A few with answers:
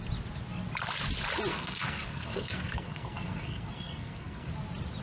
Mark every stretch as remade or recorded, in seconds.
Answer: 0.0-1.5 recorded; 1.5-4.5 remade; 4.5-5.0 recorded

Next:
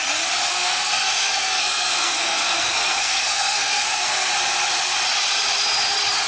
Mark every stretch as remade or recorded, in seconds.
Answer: 0.0-0.5 recorded; 0.5-4.3 remade; 4.3-6.3 recorded

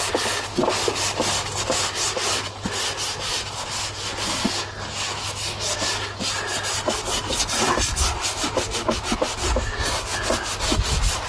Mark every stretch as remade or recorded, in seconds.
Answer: 0.0-11.3 recorded

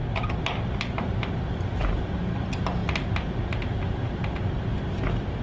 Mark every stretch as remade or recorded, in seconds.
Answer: 0.0-5.4 recorded